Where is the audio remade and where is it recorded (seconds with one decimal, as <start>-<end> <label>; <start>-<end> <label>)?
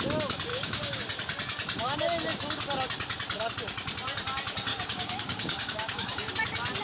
0.0-0.5 recorded; 0.5-1.0 remade; 1.0-4.7 recorded; 4.7-6.3 remade; 6.3-6.8 recorded